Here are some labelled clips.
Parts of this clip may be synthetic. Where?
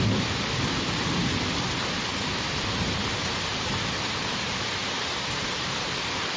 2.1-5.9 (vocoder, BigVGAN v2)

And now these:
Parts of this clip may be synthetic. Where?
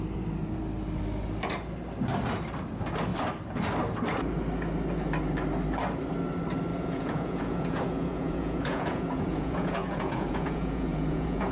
6.7-11.5 (vocoder, Vocos)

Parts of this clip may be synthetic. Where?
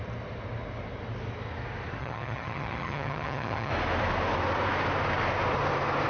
2.0-3.7 (vocoder, HiFi-GAN)